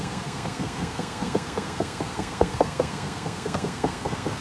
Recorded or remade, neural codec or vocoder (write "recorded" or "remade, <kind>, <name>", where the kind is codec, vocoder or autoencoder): remade, codec, SNAC